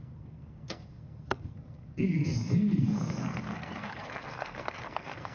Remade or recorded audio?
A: remade